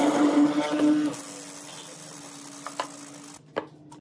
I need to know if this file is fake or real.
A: real